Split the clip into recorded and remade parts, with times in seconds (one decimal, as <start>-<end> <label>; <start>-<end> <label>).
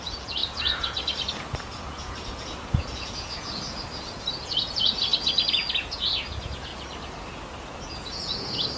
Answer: 0.0-5.1 remade; 5.1-5.8 recorded; 5.8-6.7 remade; 6.7-7.9 recorded; 7.9-8.8 remade